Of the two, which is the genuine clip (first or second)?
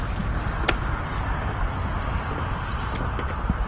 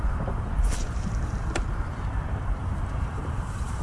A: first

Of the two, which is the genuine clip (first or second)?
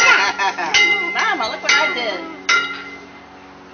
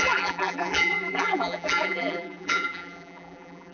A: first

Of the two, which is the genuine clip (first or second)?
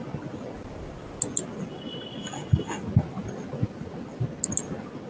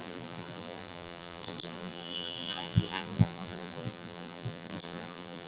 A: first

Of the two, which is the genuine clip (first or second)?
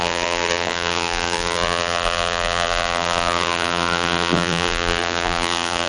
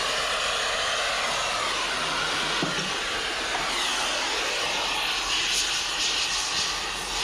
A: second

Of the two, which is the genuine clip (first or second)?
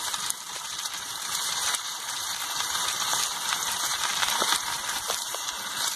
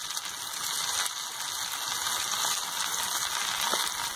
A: second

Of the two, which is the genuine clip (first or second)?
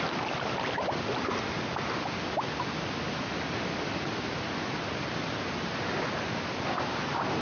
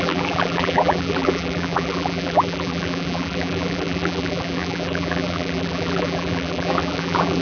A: first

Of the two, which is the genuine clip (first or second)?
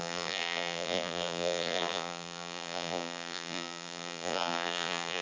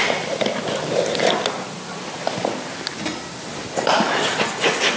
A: second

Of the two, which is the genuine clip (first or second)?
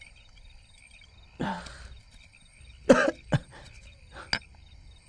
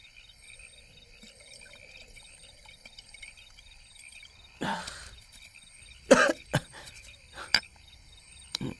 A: first